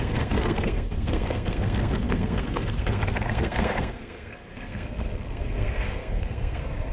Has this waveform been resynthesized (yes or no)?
yes